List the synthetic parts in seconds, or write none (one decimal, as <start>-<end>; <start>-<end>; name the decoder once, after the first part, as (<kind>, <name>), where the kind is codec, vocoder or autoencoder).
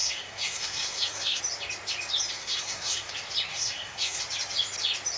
0.0-1.4 (codec, SNAC); 2.4-3.1; 3.5-4.2